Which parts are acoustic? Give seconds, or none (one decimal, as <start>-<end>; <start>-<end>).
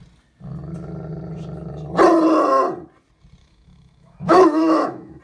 0.0-3.4